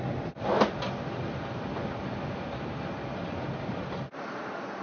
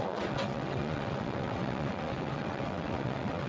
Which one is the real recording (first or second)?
first